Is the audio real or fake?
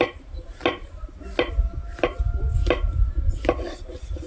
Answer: real